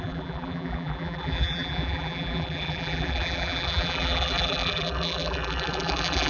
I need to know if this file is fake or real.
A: fake